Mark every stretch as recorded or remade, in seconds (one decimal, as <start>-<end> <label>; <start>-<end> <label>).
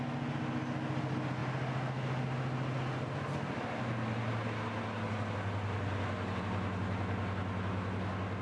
0.0-8.4 recorded